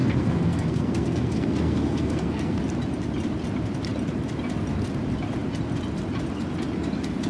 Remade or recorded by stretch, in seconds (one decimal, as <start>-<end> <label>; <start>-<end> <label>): 0.0-2.6 remade; 2.6-7.3 recorded